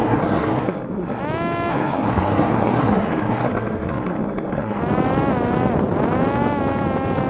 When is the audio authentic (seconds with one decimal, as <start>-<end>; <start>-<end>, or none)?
1.2-1.7; 4.8-7.3